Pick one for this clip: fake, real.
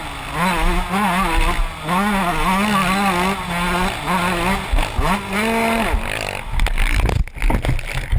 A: real